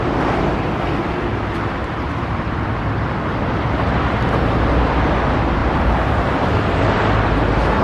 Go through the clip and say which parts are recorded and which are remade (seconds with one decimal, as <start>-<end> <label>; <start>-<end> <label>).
0.0-1.8 recorded; 1.8-2.8 remade; 2.8-5.6 recorded; 5.6-6.5 remade; 6.5-7.8 recorded